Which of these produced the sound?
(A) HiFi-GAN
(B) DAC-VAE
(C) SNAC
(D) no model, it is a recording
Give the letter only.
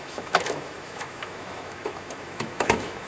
B